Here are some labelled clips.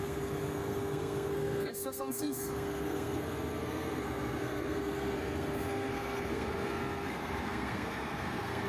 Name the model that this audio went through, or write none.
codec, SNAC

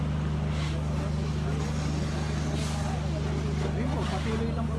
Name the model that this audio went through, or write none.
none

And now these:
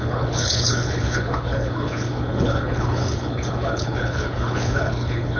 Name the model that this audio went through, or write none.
codec, HILCodec